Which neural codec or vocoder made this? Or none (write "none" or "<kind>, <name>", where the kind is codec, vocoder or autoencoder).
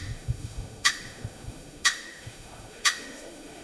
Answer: autoencoder, DAC-VAE